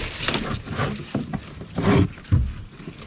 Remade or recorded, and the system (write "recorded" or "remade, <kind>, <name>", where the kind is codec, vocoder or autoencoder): recorded